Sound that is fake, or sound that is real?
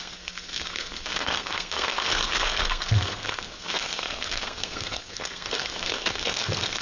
fake